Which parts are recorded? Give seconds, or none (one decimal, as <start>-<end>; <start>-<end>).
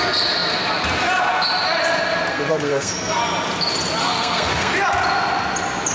0.0-2.3; 3.2-4.0; 4.7-5.9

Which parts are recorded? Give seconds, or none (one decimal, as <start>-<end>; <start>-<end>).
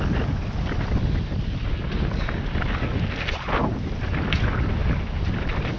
0.0-5.8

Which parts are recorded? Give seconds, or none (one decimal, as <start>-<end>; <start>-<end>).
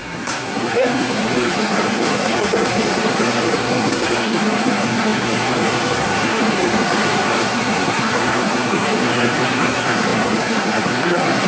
none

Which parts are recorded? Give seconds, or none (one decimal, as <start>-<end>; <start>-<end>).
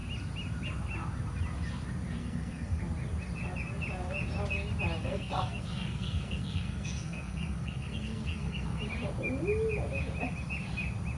0.0-2.2; 2.8-5.0; 8.8-11.2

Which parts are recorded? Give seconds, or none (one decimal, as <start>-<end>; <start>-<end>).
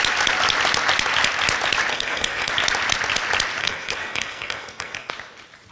0.0-1.9; 2.5-3.6; 5.1-5.7